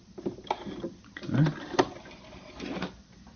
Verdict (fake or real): real